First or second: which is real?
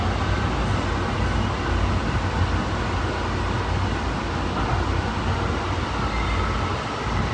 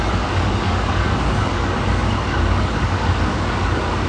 first